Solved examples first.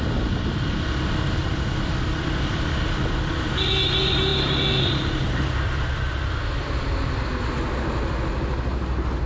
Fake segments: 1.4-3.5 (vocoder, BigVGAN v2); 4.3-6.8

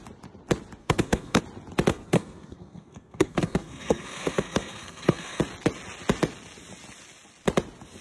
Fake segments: 0.8-1.4 (codec, SNAC); 1.9-5.4

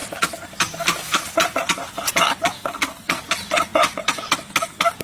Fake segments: 2.6-3.2 (codec, SNAC)

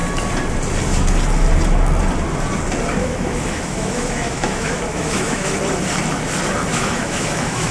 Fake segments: 3.0-5.5 (autoencoder, DAC-VAE); 6.7-7.7

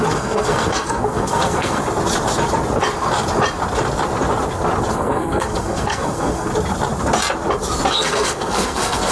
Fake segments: 0.0-1.8 (codec, SNAC); 4.9-6.5; 7.9-9.1

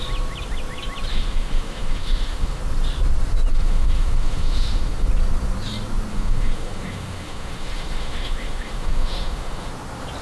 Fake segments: 1.1-2.6 (autoencoder, DAC-VAE); 3.5-5.1; 6.1-9.7

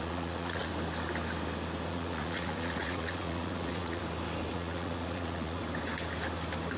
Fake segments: 0.0-0.7 (vocoder, Vocos); 1.9-4.0; 4.5-5.6